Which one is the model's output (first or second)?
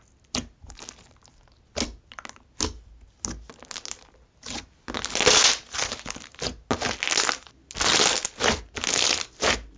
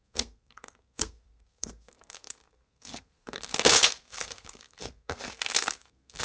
second